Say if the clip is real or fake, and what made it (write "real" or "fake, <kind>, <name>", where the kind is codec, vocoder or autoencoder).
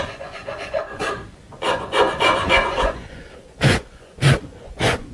fake, vocoder, Vocos